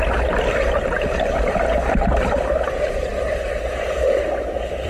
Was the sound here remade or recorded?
recorded